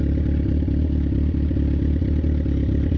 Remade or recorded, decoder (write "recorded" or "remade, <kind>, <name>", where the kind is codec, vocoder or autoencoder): recorded